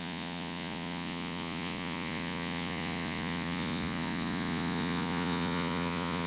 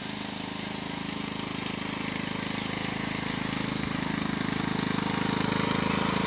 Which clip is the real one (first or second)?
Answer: second